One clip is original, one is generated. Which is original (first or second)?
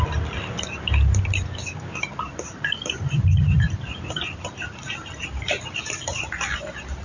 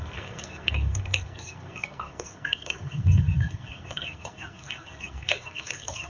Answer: first